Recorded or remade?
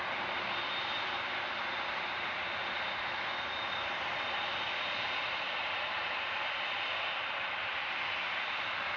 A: recorded